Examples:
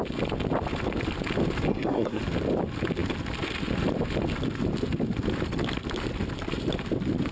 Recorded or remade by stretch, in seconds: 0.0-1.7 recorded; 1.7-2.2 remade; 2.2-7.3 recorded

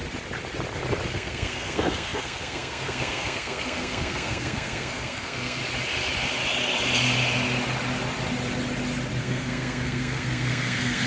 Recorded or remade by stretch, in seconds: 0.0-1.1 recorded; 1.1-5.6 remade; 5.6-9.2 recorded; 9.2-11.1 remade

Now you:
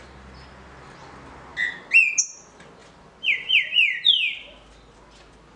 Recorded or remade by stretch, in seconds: 0.0-5.6 recorded

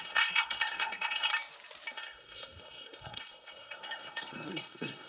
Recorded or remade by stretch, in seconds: 0.0-1.3 remade; 1.3-1.9 recorded; 1.9-5.1 remade